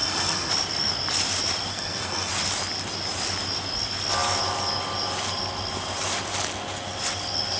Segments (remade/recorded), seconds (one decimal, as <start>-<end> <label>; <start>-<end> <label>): 0.0-0.5 remade; 0.5-1.7 recorded; 1.7-2.3 remade; 2.3-7.6 recorded

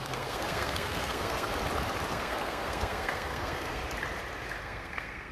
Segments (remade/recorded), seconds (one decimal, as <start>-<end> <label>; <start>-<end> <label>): 0.0-1.5 remade; 1.5-2.1 recorded; 2.1-3.8 remade; 3.8-4.6 recorded; 4.6-5.3 remade

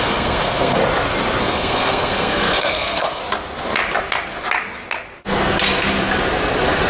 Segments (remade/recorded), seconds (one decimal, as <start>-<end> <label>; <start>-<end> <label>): 0.0-0.8 remade; 0.8-1.4 recorded; 1.4-3.2 remade; 3.2-6.9 recorded

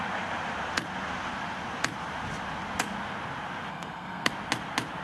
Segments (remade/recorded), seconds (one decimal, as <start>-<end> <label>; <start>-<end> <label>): 0.0-3.7 recorded; 3.7-4.3 remade; 4.3-5.0 recorded